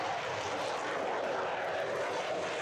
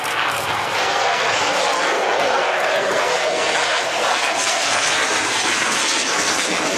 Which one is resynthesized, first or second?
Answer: second